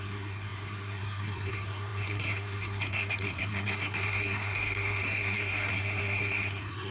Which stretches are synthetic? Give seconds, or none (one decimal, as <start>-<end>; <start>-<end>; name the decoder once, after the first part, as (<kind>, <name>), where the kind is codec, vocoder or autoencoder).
0.0-6.9 (codec, SNAC)